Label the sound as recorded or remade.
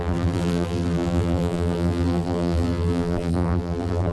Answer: remade